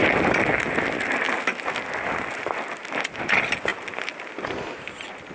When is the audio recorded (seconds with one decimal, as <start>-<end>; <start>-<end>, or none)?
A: 0.0-5.3